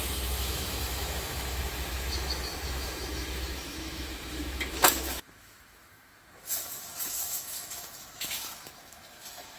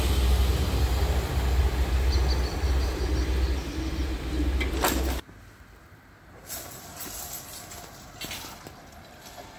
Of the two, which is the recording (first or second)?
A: second